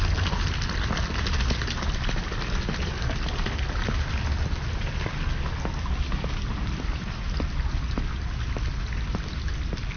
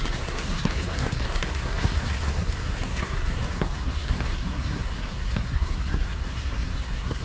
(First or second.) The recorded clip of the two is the first